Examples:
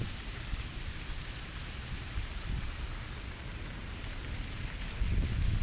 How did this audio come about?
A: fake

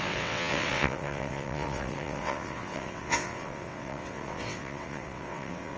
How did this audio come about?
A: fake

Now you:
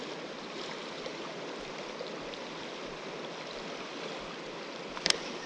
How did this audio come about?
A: real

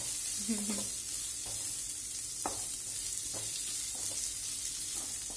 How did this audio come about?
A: real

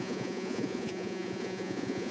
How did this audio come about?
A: fake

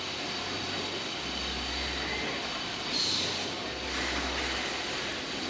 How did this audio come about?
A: real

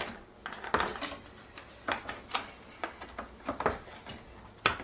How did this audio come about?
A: real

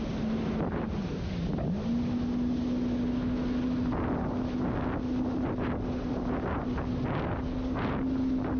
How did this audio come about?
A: real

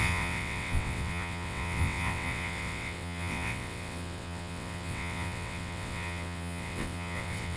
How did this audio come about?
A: fake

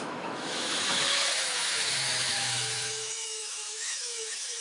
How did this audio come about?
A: fake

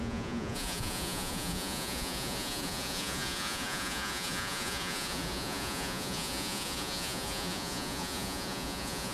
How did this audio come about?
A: fake